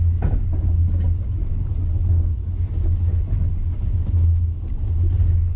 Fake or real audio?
real